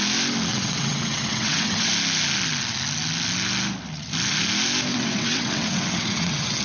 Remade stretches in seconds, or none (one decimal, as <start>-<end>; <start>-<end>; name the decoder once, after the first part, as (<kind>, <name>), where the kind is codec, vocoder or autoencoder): 0.5-1.9 (vocoder, WaveNeXt); 4.9-6.6